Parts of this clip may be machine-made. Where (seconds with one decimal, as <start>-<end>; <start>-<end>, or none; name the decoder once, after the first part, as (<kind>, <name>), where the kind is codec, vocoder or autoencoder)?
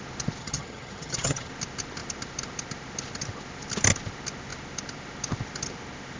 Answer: 0.4-1.5 (vocoder, HiFi-GAN)